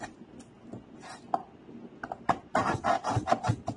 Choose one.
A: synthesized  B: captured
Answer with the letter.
B